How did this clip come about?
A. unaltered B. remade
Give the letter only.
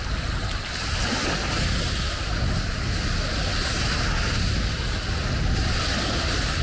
A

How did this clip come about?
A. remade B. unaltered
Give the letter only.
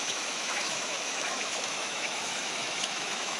A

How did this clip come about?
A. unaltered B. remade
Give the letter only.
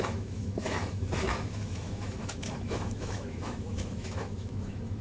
B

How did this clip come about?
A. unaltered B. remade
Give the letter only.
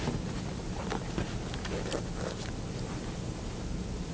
A